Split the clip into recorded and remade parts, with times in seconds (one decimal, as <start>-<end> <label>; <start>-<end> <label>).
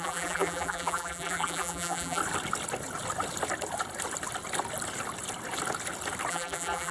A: 0.0-2.2 remade; 2.2-6.3 recorded; 6.3-6.9 remade